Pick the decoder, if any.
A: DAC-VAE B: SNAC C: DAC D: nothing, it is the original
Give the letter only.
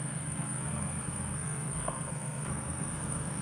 B